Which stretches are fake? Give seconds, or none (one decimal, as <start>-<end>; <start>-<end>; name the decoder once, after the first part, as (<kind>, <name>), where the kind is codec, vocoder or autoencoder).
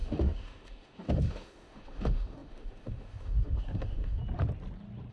0.0-4.2 (autoencoder, DAC-VAE)